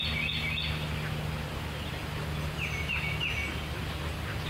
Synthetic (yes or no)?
no